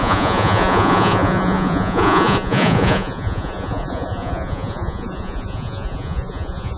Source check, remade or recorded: remade